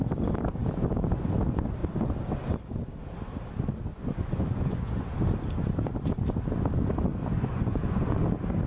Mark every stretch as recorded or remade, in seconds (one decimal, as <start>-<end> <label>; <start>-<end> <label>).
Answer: 0.0-3.9 recorded; 3.9-5.1 remade; 5.1-7.5 recorded; 7.5-8.2 remade; 8.2-8.7 recorded